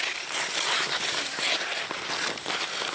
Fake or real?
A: real